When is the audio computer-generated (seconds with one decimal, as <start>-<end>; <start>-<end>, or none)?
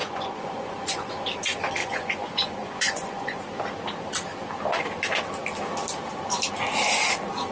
0.0-1.1; 1.8-3.4